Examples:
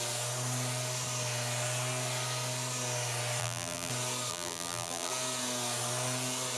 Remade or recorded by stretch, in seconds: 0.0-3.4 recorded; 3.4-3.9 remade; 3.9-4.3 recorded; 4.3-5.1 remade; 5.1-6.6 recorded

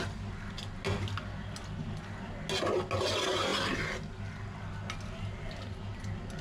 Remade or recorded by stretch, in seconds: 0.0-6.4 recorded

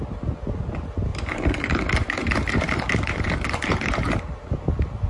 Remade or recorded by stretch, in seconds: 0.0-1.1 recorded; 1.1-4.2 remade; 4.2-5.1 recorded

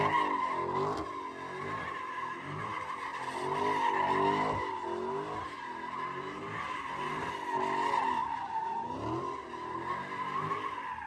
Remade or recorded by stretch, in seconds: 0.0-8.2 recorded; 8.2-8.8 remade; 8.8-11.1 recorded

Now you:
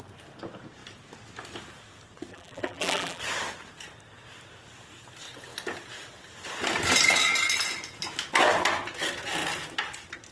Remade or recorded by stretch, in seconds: 0.0-2.3 recorded; 2.3-3.2 remade; 3.2-10.3 recorded